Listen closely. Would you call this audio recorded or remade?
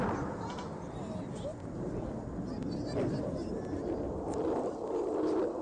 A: recorded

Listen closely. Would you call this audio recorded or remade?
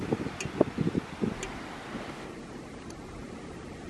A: recorded